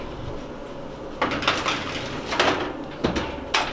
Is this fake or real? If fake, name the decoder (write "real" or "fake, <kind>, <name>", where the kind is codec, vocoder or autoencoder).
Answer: real